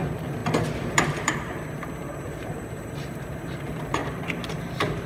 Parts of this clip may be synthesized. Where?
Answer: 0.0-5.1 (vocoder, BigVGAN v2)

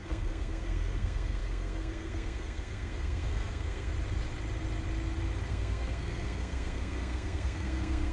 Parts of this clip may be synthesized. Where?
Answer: 0.0-3.9 (codec, SNAC); 5.5-8.1

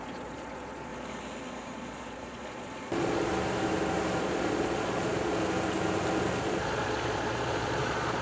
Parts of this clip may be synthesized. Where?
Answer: 0.0-0.9 (vocoder, Vocos); 1.5-3.3; 4.2-5.4; 6.4-8.2